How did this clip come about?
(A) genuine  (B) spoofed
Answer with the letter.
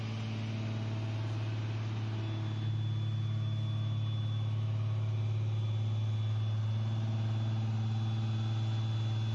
A